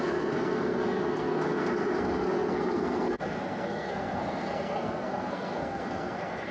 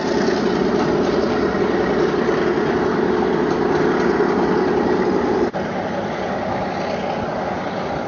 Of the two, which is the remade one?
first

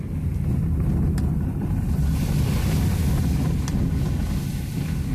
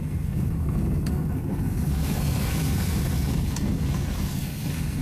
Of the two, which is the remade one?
second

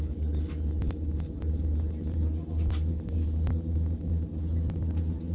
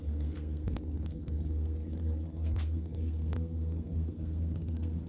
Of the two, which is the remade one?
second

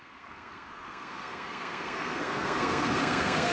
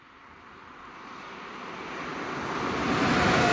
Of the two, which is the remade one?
first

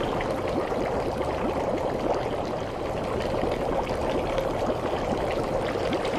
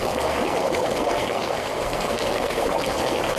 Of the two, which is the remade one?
second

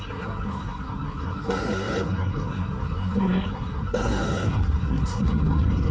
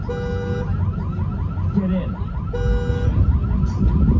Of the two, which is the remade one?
first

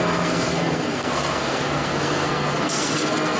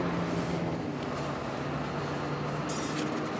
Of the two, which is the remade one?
first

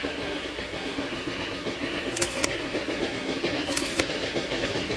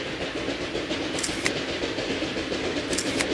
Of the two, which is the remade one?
first